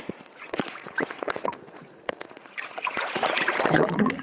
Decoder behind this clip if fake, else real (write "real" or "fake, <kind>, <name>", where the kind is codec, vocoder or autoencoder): fake, vocoder, Vocos